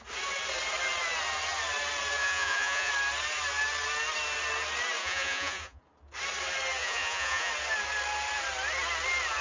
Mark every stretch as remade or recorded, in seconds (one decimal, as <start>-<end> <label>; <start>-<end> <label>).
0.0-2.2 recorded; 2.2-2.9 remade; 2.9-5.0 recorded; 5.0-5.8 remade; 5.8-6.8 recorded; 6.8-7.5 remade; 7.5-9.4 recorded